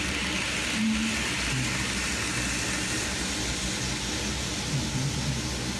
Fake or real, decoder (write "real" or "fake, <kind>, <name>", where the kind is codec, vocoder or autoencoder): real